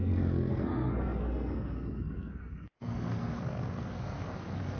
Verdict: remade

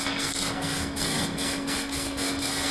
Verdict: remade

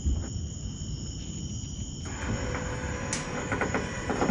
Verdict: recorded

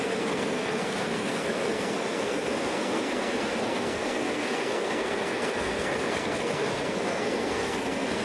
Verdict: remade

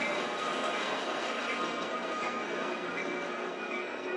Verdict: remade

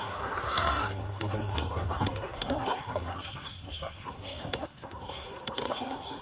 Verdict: remade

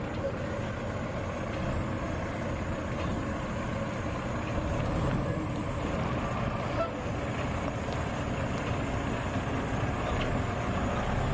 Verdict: recorded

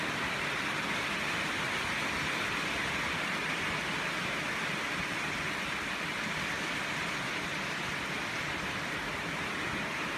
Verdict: recorded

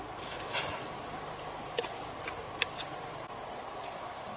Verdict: recorded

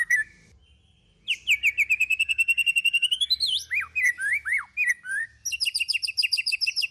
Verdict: recorded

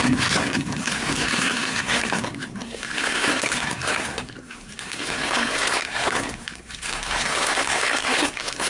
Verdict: remade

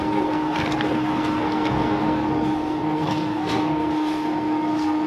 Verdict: remade